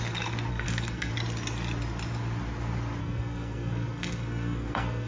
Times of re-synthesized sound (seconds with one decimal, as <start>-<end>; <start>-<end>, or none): 0.5-1.1; 3.0-5.1